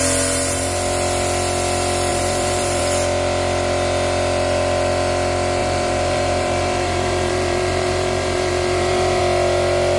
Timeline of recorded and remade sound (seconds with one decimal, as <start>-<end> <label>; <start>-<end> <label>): 0.0-2.1 recorded; 2.1-2.8 remade; 2.8-5.6 recorded; 5.6-9.2 remade; 9.2-10.0 recorded